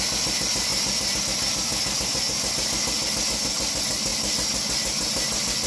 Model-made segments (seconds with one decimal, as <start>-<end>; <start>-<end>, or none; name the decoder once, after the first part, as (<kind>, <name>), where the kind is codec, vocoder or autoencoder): none